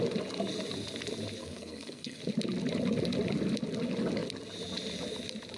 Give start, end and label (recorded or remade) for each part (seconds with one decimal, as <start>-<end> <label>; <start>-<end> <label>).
0.0-1.4 recorded; 1.4-2.2 remade; 2.2-5.6 recorded